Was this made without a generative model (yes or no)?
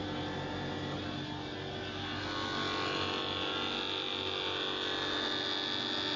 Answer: yes